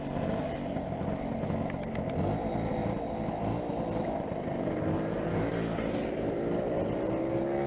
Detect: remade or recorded recorded